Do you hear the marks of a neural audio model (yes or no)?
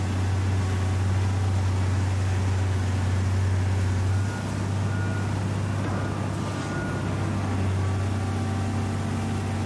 no